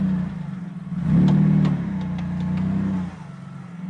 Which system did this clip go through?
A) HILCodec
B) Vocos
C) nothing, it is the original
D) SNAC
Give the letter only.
C